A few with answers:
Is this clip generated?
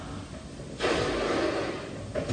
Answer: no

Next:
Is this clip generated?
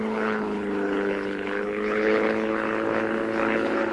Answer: yes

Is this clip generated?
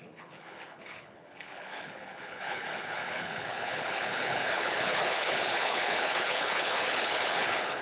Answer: yes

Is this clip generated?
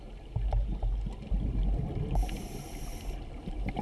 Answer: no